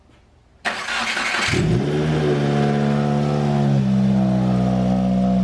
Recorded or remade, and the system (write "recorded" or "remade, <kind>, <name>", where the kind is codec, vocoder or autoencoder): recorded